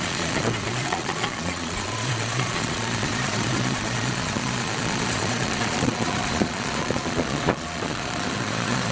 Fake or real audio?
fake